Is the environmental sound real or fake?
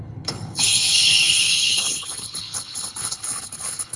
fake